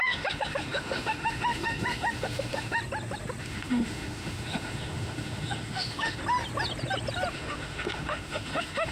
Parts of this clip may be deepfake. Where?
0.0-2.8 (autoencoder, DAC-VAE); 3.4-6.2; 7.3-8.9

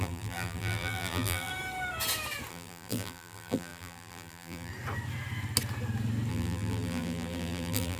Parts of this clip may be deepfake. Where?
0.0-1.5 (vocoder, BigVGAN v2); 2.5-4.7; 6.3-8.0

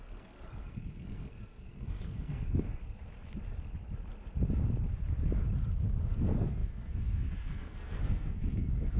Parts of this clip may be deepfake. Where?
0.0-2.8 (codec, SNAC); 6.1-9.0

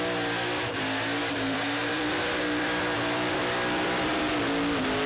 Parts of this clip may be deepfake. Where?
1.2-4.3 (vocoder, BigVGAN v2)

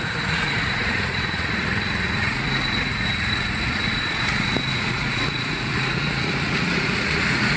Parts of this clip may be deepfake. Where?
0.0-7.6 (vocoder, Vocos)

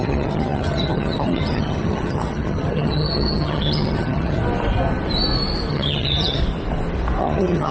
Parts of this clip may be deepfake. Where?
0.0-4.4 (vocoder, HiFi-GAN); 5.7-6.4; 7.2-7.7